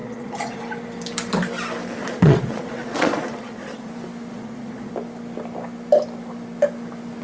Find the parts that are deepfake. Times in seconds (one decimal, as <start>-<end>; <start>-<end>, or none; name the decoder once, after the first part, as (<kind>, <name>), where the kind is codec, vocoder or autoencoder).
0.0-0.6 (vocoder, Vocos); 2.0-3.9; 4.3-4.9